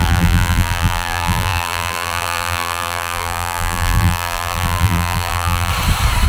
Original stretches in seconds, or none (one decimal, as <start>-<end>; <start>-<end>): 5.7-6.3